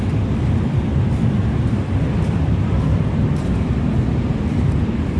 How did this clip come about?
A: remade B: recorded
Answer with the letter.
B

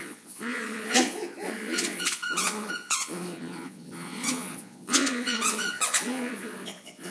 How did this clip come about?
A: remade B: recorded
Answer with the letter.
A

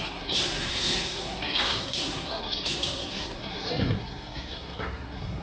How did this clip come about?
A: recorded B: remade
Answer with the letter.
B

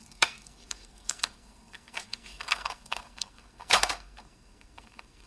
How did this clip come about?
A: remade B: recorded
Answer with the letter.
A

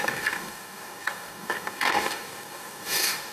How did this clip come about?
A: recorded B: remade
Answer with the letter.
B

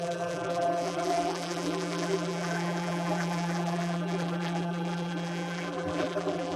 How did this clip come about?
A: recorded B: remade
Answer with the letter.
B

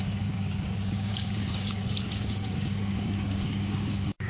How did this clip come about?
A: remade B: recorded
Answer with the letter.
A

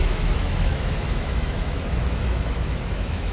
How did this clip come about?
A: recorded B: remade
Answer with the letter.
B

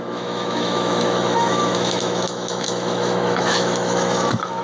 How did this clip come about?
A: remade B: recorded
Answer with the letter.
A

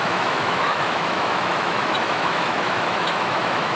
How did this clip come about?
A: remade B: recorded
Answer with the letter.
A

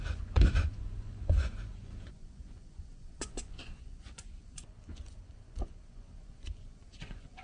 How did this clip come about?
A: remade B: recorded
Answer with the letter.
A